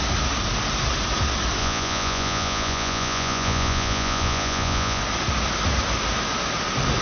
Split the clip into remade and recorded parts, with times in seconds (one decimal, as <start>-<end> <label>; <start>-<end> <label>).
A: 0.0-1.6 recorded; 1.6-5.0 remade; 5.0-7.0 recorded